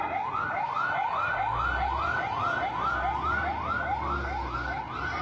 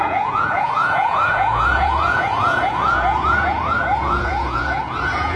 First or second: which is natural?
first